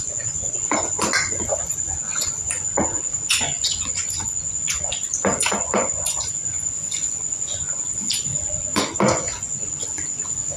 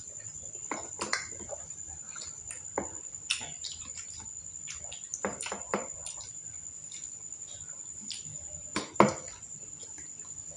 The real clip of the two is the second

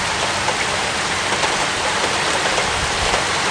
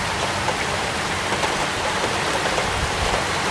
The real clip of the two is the first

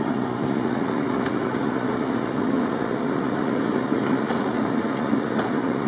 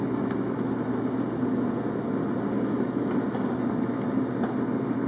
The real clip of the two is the second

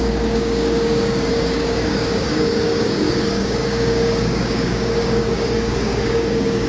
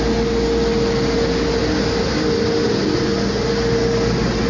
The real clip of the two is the second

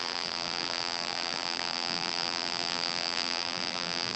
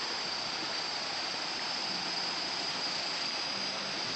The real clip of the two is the second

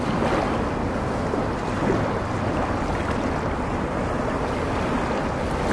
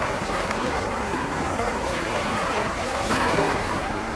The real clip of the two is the first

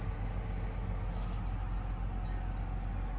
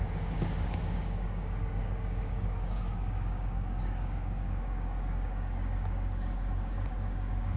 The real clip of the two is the first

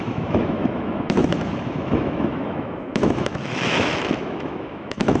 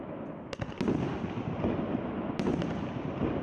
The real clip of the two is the second